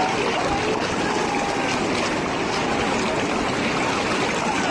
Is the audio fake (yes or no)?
no